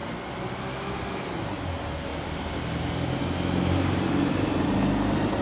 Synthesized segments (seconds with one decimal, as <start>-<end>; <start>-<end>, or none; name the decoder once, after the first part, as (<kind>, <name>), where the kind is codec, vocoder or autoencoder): none